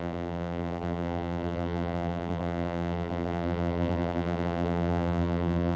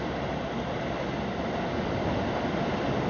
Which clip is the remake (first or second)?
first